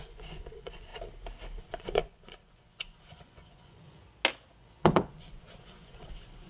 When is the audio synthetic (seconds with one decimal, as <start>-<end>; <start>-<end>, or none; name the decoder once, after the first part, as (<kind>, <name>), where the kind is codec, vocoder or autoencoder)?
0.0-0.9 (vocoder, Vocos); 1.6-4.0; 4.6-6.5